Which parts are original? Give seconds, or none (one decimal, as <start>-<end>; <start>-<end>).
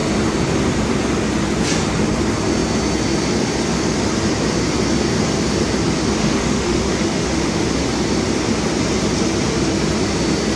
0.0-6.2; 7.6-10.6